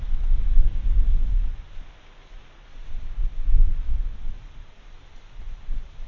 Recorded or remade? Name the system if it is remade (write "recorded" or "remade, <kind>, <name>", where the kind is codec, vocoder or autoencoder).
recorded